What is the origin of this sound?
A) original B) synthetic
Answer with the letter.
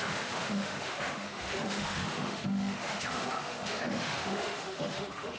B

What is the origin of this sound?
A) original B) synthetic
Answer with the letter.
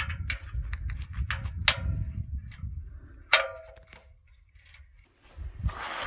A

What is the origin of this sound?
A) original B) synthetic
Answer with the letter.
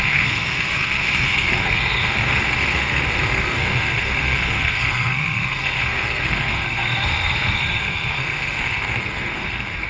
B